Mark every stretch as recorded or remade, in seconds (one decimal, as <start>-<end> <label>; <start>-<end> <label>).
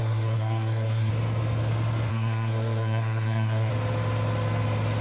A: 0.0-1.1 remade; 1.1-2.1 recorded; 2.1-3.7 remade; 3.7-5.0 recorded